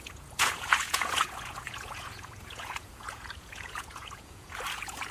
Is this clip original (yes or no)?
no